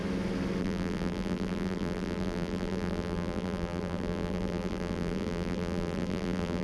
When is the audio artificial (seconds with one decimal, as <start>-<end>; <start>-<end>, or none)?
0.6-6.6